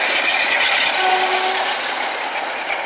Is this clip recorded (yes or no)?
yes